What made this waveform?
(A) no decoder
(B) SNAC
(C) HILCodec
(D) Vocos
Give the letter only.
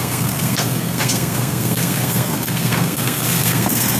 B